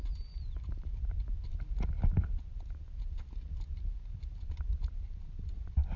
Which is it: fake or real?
real